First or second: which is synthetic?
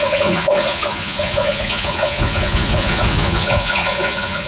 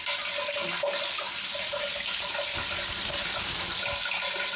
first